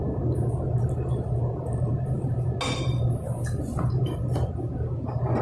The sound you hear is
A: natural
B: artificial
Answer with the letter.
A